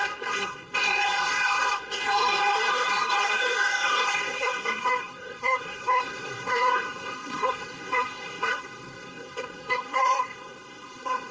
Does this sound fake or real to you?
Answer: fake